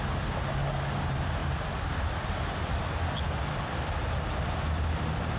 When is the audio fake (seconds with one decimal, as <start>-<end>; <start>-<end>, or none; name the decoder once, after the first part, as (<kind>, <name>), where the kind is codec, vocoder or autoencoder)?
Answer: none